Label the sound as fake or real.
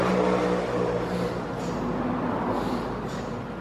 real